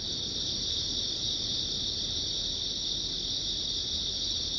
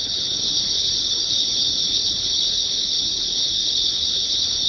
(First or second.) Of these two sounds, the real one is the first